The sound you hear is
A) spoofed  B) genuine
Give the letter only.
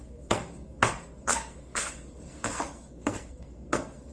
A